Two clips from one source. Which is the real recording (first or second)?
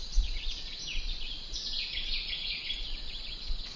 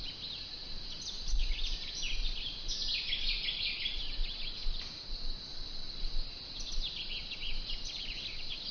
second